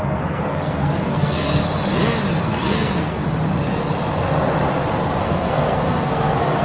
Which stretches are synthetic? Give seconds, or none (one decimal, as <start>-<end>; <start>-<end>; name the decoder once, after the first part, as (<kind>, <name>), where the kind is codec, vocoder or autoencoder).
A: 0.0-1.6 (codec, SNAC); 2.4-3.2; 5.2-6.6